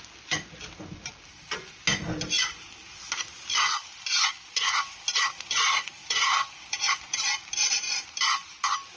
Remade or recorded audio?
recorded